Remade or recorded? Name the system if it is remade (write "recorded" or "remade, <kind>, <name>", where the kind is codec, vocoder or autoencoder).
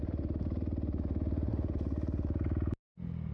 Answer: recorded